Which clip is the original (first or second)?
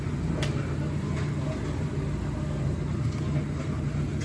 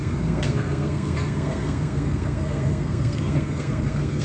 first